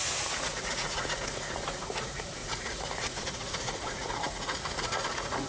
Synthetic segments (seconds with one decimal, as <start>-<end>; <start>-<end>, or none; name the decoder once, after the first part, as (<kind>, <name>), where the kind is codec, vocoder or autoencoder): 0.0-5.5 (vocoder, Vocos)